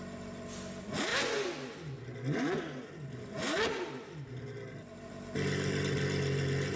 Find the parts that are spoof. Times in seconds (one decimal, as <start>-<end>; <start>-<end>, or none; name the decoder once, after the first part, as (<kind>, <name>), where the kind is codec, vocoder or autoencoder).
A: none